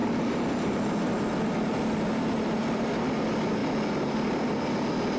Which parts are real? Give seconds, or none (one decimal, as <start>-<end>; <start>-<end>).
0.0-5.2